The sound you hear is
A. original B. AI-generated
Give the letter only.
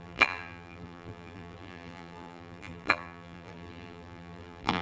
B